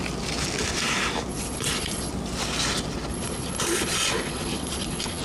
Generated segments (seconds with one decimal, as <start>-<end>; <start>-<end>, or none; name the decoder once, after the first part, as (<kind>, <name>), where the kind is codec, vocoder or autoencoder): 1.3-2.1 (vocoder, Vocos); 3.1-5.2